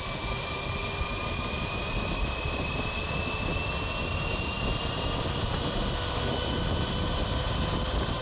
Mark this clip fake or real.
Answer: real